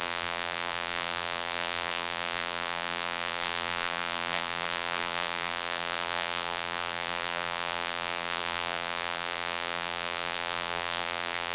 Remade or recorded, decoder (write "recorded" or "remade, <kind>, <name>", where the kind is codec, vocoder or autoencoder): remade, vocoder, BigVGAN v2